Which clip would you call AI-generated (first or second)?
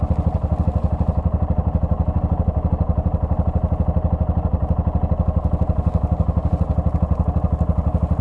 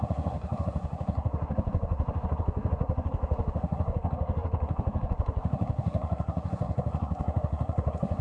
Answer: second